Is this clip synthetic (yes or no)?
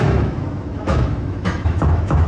yes